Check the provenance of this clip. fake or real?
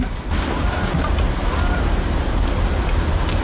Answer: real